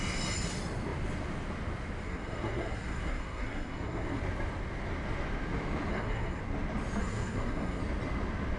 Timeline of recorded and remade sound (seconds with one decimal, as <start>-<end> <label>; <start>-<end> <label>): 0.0-2.0 recorded; 2.0-4.2 remade; 4.2-5.9 recorded; 5.9-6.4 remade; 6.4-7.0 recorded; 7.0-7.8 remade; 7.8-8.6 recorded